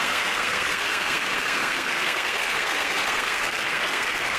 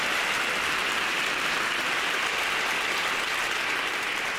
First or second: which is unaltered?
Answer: second